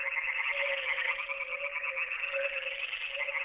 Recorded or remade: recorded